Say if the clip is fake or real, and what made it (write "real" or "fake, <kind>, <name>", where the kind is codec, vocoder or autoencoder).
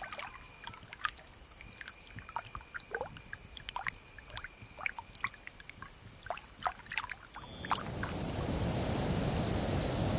real